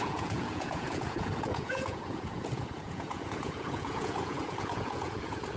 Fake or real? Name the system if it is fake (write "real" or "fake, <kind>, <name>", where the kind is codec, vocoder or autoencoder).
fake, vocoder, Vocos